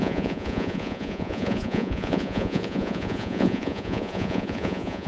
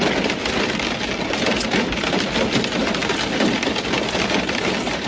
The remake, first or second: first